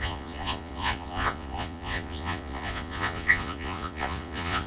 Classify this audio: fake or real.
fake